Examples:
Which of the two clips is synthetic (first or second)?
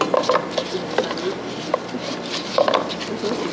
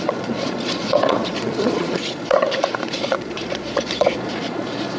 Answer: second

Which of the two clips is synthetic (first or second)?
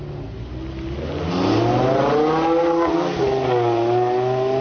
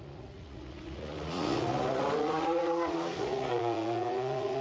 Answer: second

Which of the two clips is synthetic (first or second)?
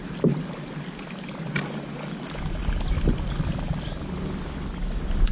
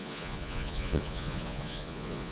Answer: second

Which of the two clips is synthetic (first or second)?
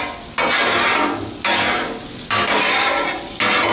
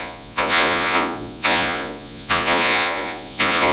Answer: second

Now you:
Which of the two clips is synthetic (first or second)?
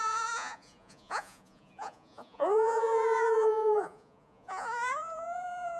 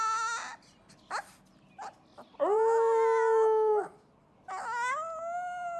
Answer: first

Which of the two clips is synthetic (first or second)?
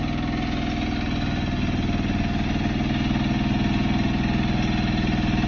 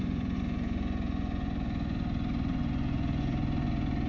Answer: second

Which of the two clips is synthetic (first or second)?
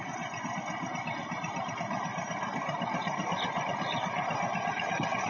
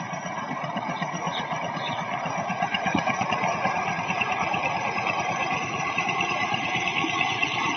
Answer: second